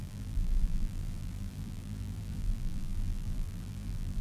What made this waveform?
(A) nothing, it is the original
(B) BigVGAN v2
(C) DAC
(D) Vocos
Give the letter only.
B